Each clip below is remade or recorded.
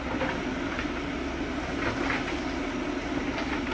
recorded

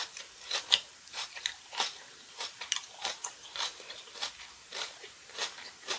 remade